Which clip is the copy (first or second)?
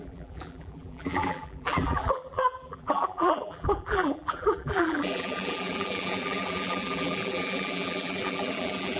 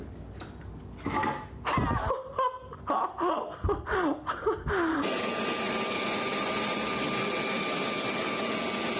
first